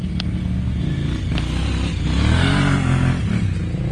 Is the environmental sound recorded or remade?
recorded